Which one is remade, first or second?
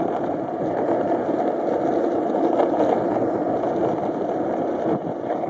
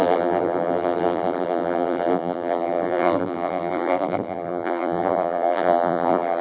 second